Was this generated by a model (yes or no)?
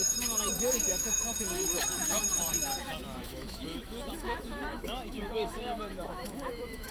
yes